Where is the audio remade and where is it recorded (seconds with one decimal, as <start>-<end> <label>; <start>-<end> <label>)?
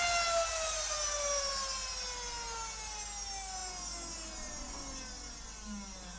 0.0-0.5 recorded; 0.5-1.5 remade; 1.5-6.2 recorded